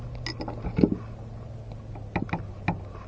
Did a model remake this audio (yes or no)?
no